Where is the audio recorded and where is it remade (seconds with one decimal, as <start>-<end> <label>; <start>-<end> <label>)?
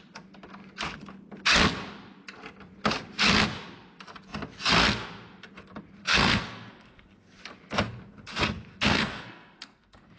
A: 0.0-6.0 recorded; 6.0-7.4 remade; 7.4-8.7 recorded; 8.7-10.2 remade